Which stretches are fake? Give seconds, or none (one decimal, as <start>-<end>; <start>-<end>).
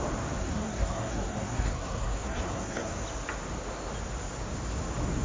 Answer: 0.4-2.9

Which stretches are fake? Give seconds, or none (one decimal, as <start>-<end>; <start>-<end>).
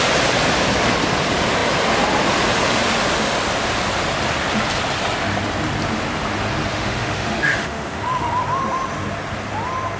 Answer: 6.7-8.3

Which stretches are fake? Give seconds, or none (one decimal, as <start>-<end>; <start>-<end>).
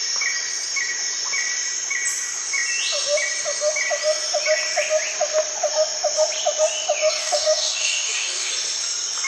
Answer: 7.2-8.5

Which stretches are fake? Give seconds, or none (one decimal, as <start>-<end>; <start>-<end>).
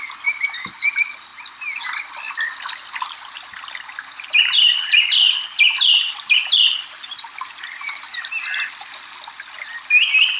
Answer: none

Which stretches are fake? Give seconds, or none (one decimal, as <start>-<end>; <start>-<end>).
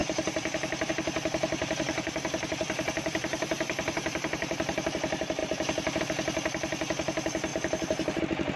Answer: 0.0-0.9; 1.6-4.9; 7.5-8.2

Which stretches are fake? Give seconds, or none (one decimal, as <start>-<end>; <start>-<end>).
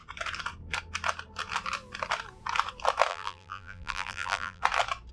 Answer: 3.1-4.6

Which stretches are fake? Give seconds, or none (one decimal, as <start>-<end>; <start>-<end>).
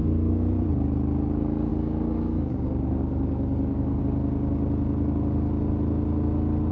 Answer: 0.0-0.6; 1.7-4.0